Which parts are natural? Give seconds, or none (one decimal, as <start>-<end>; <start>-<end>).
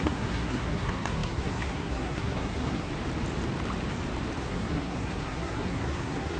2.9-4.4